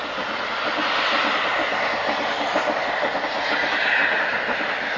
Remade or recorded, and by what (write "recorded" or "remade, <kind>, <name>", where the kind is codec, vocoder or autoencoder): remade, vocoder, BigVGAN v2